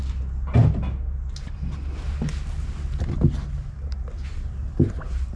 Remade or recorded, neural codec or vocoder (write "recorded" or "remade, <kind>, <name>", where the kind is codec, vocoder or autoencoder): recorded